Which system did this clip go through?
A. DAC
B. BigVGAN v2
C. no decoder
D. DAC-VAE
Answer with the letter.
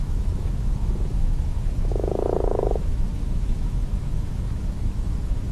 D